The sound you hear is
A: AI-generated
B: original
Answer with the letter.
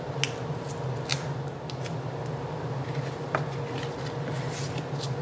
B